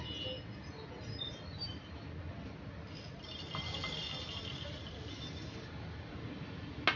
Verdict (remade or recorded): recorded